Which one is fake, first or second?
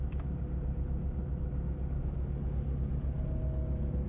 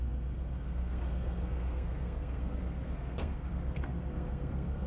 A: second